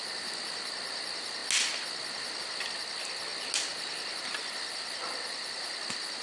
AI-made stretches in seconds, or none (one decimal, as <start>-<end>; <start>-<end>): none